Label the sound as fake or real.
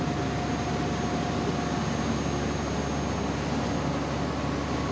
real